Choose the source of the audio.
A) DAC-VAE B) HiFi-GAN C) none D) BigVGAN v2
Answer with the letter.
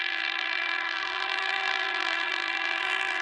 D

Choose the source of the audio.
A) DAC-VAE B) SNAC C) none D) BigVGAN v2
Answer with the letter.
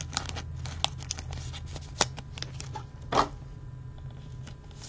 C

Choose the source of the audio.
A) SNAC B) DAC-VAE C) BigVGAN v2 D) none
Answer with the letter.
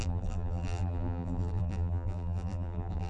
C